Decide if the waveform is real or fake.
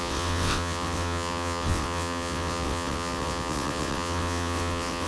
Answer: fake